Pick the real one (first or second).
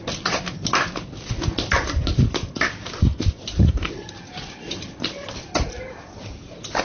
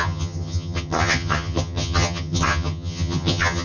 first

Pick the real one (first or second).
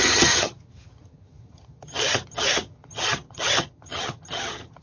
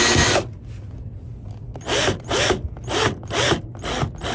second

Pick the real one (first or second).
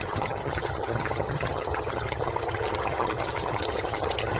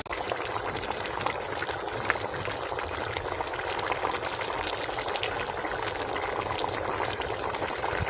second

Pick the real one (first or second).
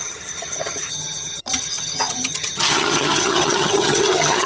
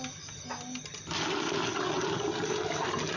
second